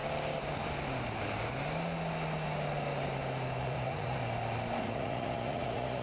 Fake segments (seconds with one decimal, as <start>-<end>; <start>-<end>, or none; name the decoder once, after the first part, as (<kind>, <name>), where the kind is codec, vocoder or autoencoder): 3.6-4.2 (vocoder, Vocos); 4.8-6.0